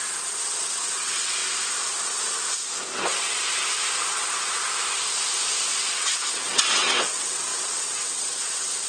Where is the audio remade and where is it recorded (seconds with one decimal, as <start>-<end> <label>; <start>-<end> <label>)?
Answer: 0.0-1.4 remade; 1.4-5.7 recorded; 5.7-8.9 remade